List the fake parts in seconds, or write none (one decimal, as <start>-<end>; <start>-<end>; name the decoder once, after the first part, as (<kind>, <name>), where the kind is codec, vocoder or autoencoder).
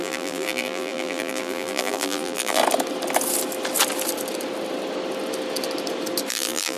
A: 0.0-2.6 (vocoder, BigVGAN v2); 6.3-6.8